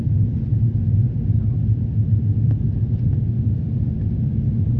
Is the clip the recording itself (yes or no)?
yes